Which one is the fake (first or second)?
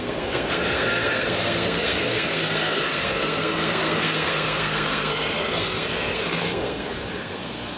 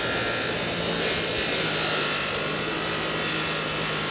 first